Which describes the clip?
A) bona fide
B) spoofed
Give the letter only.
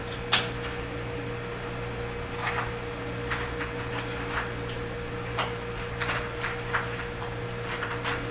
A